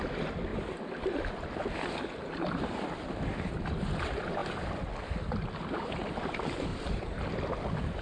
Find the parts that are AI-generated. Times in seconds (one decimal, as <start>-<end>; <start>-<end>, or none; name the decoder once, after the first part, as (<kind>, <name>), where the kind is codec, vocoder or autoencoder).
0.5-1.5 (vocoder, BigVGAN v2); 6.7-7.3